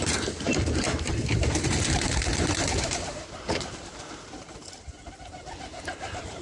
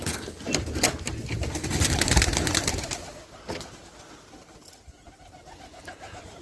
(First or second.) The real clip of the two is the second